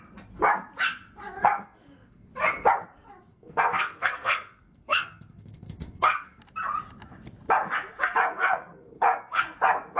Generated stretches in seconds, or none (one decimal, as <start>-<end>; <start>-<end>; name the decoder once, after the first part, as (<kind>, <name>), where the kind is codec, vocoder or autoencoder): 1.4-2.3 (codec, SNAC); 3.3-6.4; 8.0-9.4